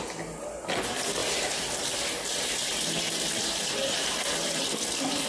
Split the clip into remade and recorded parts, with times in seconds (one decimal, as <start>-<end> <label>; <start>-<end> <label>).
0.0-5.3 recorded